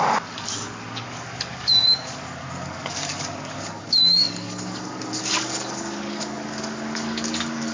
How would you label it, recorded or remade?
remade